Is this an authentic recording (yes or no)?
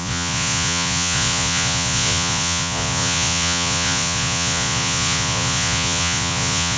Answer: no